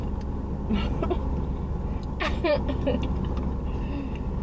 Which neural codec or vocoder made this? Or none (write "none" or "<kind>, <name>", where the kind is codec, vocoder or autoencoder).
none